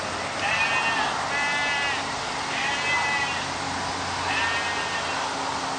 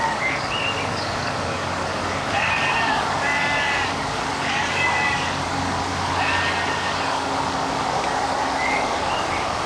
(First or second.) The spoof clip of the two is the second